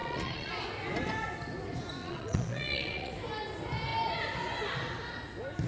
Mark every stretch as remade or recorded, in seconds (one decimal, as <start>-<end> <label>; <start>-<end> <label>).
0.0-0.5 remade; 0.5-2.0 recorded; 2.0-3.1 remade; 3.1-5.7 recorded